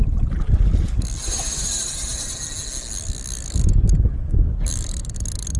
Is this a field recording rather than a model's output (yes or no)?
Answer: yes